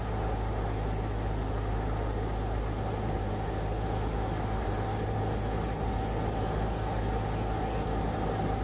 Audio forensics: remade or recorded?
recorded